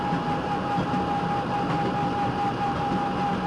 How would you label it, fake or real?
real